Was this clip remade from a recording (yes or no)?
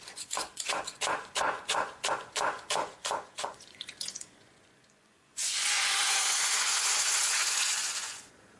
yes